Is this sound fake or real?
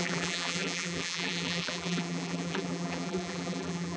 fake